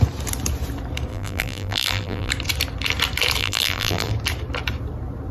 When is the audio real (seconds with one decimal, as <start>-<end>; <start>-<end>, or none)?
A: 0.0-1.1; 2.3-3.4; 4.1-5.3